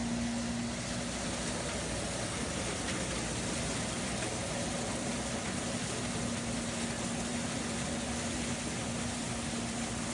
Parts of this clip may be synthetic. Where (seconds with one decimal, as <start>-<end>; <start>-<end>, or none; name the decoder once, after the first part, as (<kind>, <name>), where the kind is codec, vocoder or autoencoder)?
7.3-9.3 (vocoder, Vocos)